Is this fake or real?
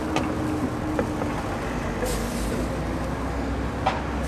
real